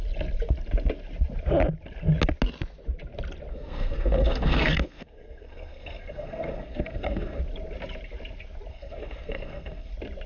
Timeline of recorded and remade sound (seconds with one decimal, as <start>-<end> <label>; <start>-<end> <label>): 0.0-3.5 recorded; 3.5-7.4 remade; 7.4-8.7 recorded; 8.7-9.9 remade; 9.9-10.3 recorded